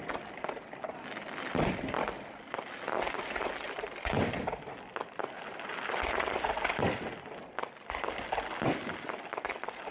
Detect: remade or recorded recorded